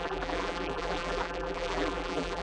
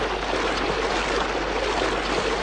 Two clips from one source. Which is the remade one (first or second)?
first